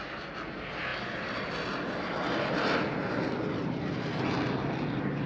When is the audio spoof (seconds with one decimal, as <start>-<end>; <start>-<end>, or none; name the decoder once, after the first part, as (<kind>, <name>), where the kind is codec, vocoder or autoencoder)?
none